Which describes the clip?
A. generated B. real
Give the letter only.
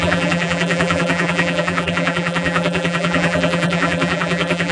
A